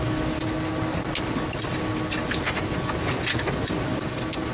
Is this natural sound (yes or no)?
yes